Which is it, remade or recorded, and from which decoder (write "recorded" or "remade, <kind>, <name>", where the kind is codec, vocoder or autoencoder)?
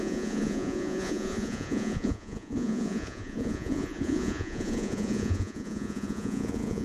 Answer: remade, vocoder, Vocos